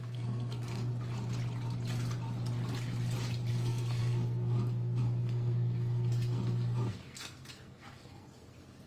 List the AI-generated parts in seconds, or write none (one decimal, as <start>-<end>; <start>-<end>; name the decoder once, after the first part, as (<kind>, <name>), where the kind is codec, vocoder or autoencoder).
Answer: 0.0-0.9 (codec, SNAC); 3.5-8.9